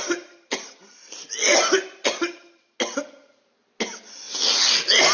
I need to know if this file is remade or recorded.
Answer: recorded